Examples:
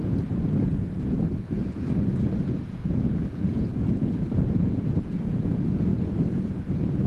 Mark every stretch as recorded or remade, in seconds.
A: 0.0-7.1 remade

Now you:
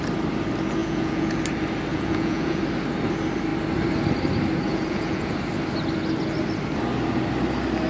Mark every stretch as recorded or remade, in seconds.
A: 0.0-0.8 recorded; 0.8-1.4 remade; 1.4-1.9 recorded; 1.9-2.6 remade; 2.6-4.7 recorded; 4.7-5.3 remade; 5.3-7.9 recorded

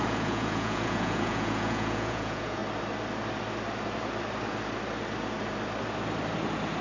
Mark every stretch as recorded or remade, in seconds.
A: 0.0-2.6 remade; 2.6-6.8 recorded

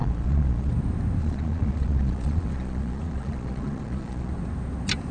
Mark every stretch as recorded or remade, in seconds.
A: 0.0-0.7 remade; 0.7-1.2 recorded; 1.2-4.3 remade; 4.3-5.1 recorded

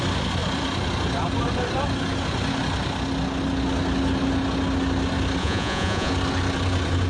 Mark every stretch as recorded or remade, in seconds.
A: 0.0-5.4 recorded; 5.4-6.1 remade; 6.1-7.1 recorded